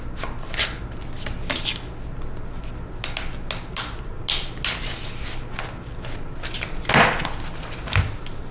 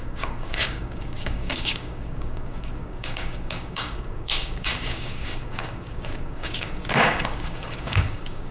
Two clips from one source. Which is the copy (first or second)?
second